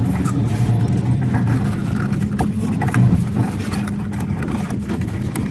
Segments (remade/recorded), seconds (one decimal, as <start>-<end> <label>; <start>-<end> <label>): 0.0-5.5 recorded